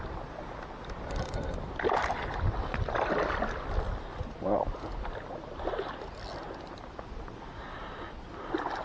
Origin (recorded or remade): recorded